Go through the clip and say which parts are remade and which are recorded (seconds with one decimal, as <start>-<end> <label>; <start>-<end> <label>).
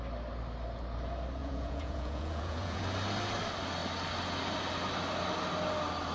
0.0-1.4 recorded; 1.4-2.8 remade; 2.8-6.1 recorded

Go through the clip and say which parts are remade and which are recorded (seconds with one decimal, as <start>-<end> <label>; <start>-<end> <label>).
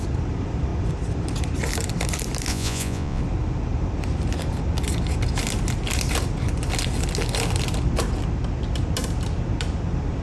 0.0-2.5 recorded; 2.5-3.2 remade; 3.2-10.2 recorded